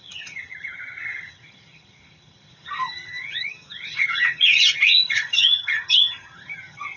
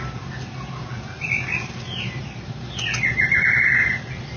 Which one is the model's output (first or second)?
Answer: first